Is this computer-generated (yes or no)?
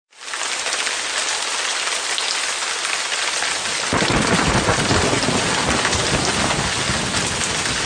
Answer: no